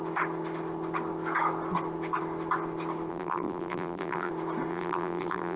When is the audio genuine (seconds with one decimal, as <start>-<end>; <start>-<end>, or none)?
0.0-3.1; 4.3-4.7